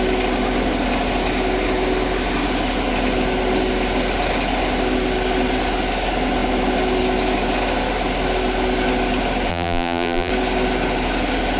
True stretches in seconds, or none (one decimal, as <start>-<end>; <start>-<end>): 0.0-9.5; 10.3-11.6